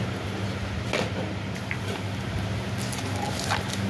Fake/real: real